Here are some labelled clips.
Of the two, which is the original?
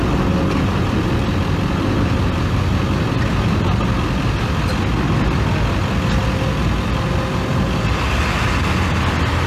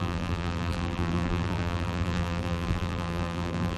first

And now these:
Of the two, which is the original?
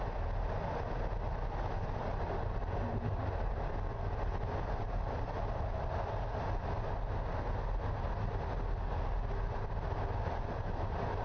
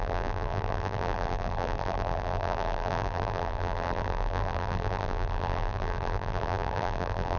first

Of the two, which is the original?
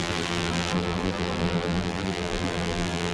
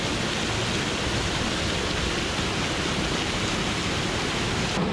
second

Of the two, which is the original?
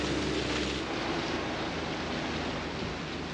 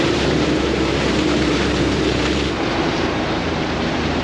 first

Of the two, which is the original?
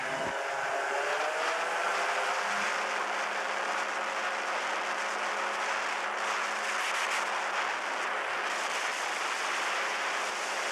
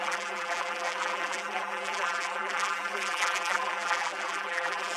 first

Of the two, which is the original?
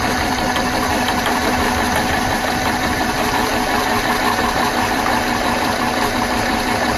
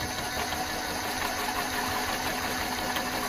second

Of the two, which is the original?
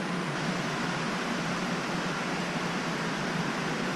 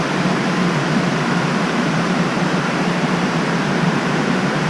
first